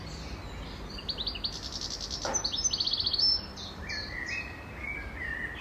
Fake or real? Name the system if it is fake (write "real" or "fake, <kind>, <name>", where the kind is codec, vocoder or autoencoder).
real